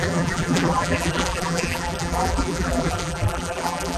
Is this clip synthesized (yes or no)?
yes